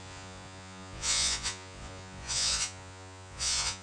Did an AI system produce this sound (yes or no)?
yes